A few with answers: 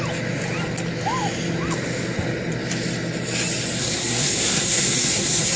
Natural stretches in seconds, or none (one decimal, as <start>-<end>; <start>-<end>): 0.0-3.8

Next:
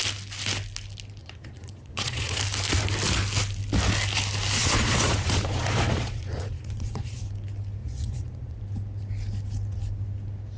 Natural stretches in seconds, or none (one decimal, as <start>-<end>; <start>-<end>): 0.0-1.2; 2.4-4.6; 7.2-7.8; 8.6-10.6

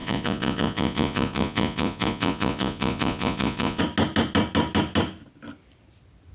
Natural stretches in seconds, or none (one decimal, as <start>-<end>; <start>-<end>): 3.8-6.3

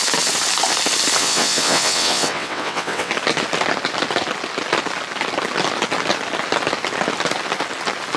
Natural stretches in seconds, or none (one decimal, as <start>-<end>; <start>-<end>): 0.0-1.2; 3.1-8.2

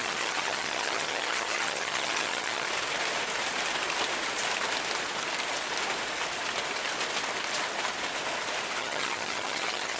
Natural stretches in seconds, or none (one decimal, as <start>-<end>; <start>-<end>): 2.7-8.8

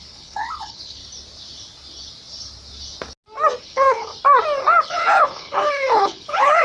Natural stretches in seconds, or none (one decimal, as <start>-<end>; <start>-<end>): 1.0-3.6; 4.1-4.8

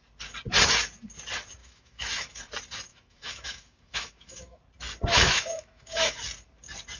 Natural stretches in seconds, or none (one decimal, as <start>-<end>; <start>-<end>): 0.0-1.6; 2.4-2.9; 4.6-5.1; 6.2-7.0

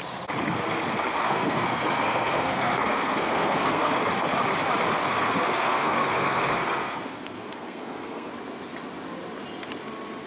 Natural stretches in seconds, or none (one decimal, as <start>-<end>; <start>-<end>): 0.0-1.2; 4.1-5.0; 8.3-10.3